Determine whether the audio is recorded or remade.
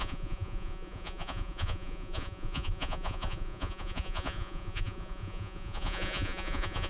remade